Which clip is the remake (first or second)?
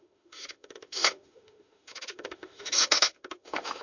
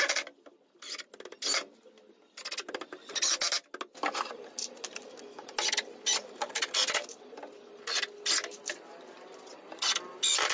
first